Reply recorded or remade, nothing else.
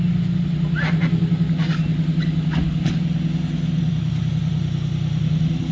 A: recorded